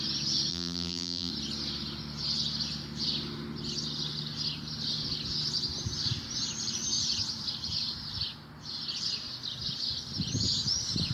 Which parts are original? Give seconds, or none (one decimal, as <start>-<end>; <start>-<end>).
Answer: 0.0-0.5; 1.3-11.1